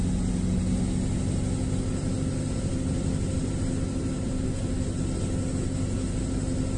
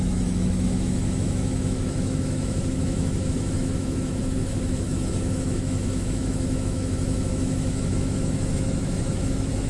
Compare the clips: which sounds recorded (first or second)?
first